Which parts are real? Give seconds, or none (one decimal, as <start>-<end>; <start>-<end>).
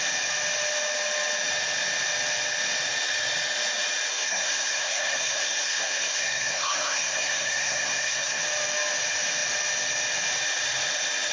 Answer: 0.0-4.1; 8.4-11.3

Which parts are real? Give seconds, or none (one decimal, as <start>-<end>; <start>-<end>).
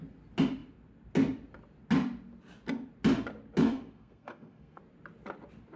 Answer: 0.0-3.6; 4.8-5.8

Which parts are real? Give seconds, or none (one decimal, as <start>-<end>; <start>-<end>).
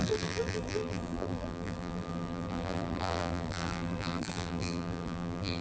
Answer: none